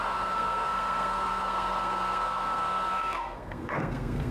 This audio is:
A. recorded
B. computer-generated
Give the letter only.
B